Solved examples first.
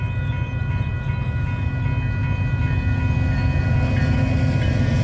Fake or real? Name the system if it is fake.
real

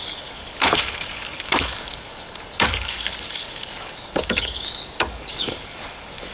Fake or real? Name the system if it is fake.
fake, codec, DAC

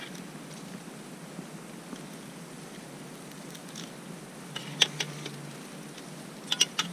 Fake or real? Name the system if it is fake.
real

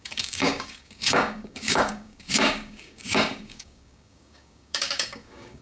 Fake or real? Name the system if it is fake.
fake, codec, DAC